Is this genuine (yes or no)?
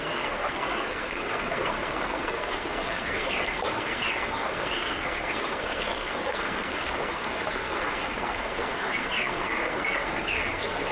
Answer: no